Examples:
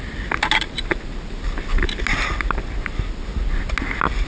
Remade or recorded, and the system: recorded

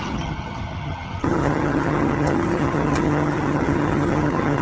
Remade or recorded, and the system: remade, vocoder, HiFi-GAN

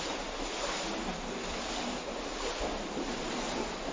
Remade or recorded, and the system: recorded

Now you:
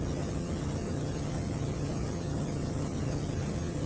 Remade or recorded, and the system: remade, vocoder, HiFi-GAN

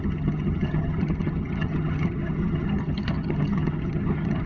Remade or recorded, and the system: remade, vocoder, HiFi-GAN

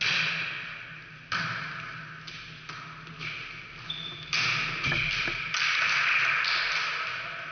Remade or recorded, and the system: recorded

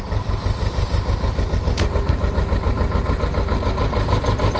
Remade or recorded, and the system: recorded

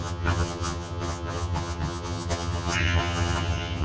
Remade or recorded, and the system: remade, vocoder, HiFi-GAN